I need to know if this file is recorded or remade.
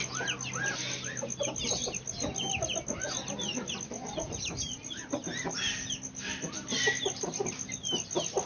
recorded